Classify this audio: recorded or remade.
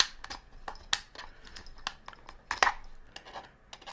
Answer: recorded